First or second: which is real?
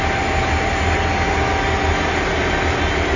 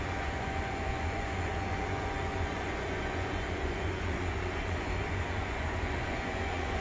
first